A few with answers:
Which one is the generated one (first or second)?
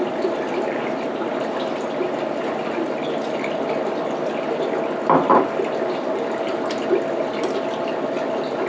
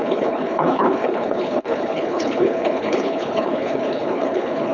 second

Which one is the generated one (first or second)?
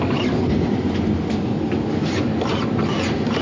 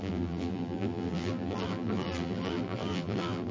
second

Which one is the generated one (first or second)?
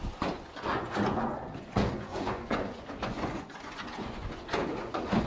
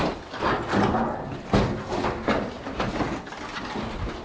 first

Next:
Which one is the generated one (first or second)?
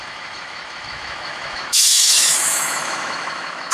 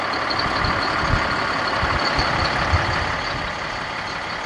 first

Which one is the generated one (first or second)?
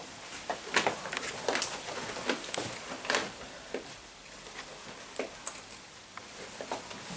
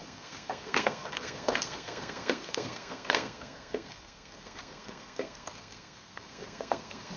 second